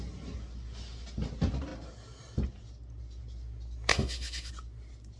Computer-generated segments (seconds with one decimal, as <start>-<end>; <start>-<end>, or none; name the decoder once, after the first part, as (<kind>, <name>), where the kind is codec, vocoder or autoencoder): 3.9-4.5 (autoencoder, DAC-VAE)